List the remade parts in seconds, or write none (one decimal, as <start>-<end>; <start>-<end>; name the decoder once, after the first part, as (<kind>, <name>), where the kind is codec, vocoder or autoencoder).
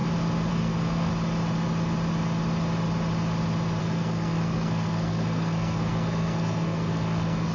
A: 0.5-1.1 (codec, SNAC); 3.8-7.5